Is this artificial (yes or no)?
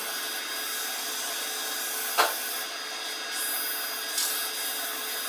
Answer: no